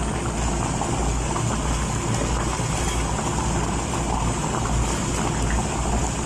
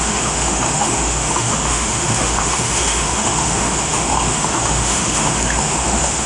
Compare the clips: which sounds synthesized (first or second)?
second